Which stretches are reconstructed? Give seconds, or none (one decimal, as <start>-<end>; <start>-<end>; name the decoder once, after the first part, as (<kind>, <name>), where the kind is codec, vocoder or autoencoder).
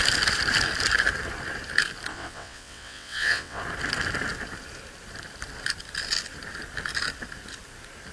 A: 2.1-3.6 (vocoder, WaveNeXt)